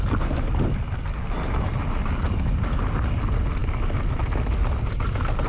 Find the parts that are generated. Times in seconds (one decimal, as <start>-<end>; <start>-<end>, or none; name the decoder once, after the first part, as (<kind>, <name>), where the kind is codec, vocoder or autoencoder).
none